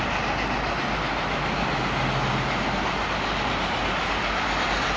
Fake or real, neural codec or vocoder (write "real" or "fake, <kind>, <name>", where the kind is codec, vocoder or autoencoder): real